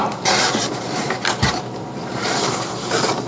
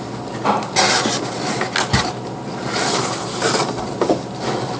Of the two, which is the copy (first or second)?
first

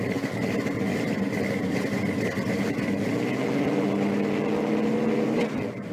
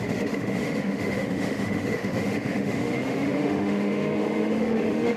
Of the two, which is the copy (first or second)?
second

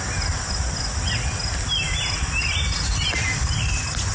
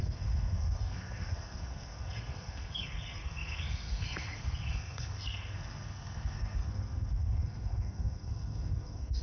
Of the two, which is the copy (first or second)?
second